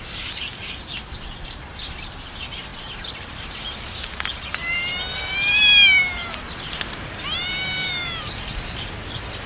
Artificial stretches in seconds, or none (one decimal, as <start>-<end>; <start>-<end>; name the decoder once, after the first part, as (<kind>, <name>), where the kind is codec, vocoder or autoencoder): 0.0-9.5 (vocoder, BigVGAN v2)